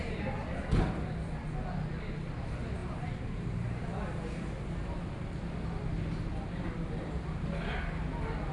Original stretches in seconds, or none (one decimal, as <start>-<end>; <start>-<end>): 0.0-2.8; 4.5-8.5